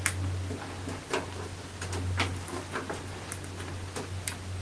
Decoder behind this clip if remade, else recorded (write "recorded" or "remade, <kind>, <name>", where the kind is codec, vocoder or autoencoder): recorded